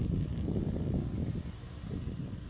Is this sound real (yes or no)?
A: yes